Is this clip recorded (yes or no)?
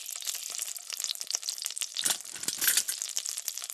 yes